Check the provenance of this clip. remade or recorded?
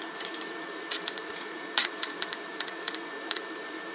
remade